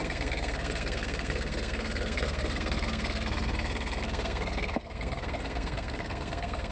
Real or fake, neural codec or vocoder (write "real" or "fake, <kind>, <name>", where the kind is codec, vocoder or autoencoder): fake, codec, SNAC